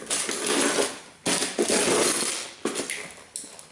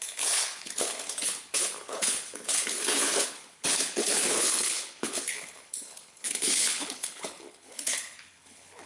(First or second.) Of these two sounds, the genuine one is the first